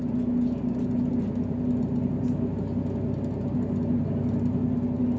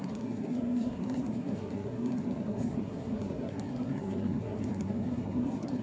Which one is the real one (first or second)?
first